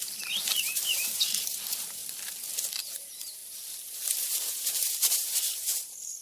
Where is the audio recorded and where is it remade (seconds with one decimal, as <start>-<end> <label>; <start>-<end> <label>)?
0.0-2.0 remade; 2.0-2.6 recorded; 2.6-3.4 remade; 3.4-4.3 recorded; 4.3-6.2 remade

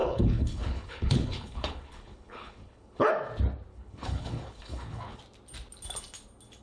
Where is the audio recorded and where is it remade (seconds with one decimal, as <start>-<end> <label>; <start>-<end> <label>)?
0.0-3.1 remade; 3.1-3.7 recorded; 3.7-5.2 remade; 5.2-6.6 recorded